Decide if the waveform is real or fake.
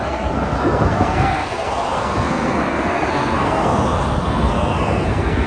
fake